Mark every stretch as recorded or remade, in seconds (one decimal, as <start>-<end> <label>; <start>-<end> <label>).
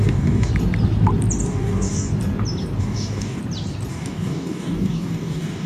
0.0-0.5 remade; 0.5-1.5 recorded; 1.5-2.1 remade; 2.1-2.8 recorded; 2.8-3.4 remade; 3.4-3.9 recorded; 3.9-5.7 remade